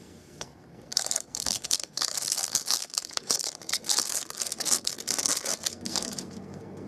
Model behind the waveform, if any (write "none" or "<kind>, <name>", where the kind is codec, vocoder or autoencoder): codec, SNAC